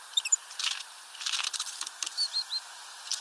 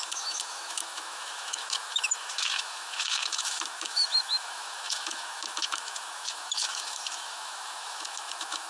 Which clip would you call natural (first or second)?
first